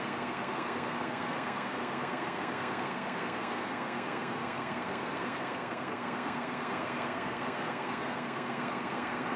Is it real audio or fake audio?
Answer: fake